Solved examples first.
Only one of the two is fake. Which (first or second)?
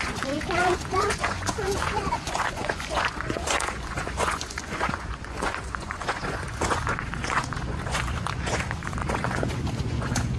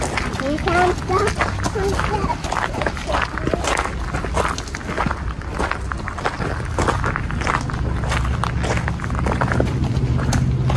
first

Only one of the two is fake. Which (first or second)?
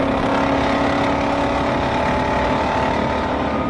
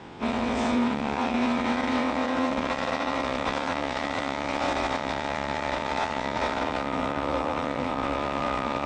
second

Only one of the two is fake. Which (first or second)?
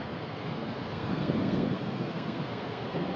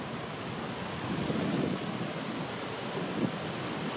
first